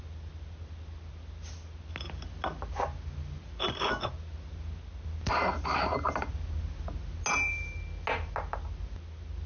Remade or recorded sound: recorded